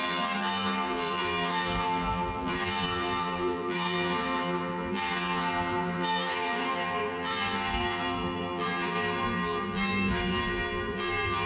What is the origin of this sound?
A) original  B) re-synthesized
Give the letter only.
B